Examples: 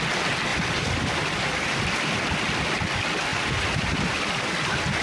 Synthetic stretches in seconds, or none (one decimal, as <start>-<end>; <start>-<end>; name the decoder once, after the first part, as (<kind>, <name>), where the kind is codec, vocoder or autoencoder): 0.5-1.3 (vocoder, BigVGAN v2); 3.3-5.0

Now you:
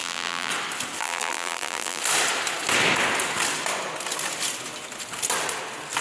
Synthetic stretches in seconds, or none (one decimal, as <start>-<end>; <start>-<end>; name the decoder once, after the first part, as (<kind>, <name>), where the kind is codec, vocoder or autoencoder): 0.0-0.5 (vocoder, BigVGAN v2); 1.0-2.0

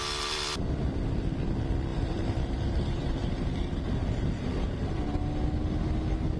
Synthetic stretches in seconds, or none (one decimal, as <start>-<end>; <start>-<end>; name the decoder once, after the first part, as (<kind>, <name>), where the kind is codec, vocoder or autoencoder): 1.9-4.9 (vocoder, BigVGAN v2)